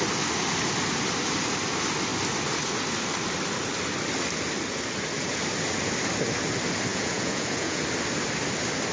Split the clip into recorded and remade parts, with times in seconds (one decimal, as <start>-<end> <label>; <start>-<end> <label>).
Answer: 0.0-6.9 recorded; 6.9-7.8 remade; 7.8-8.9 recorded